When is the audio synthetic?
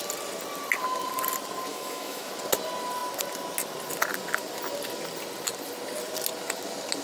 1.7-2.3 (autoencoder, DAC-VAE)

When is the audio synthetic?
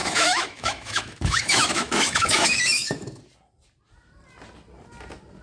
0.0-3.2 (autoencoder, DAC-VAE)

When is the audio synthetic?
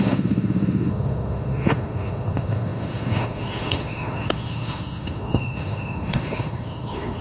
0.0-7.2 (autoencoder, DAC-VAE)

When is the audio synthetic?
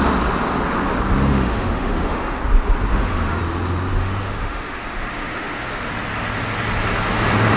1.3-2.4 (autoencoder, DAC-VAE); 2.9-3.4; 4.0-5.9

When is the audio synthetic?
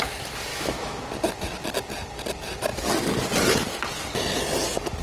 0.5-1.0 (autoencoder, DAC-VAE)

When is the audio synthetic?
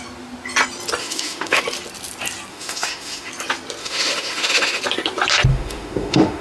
1.0-1.6 (autoencoder, DAC-VAE); 2.5-3.3; 3.8-4.8; 5.5-6.4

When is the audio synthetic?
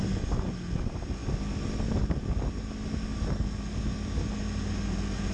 none